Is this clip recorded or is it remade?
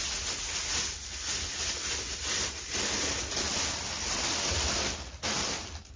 recorded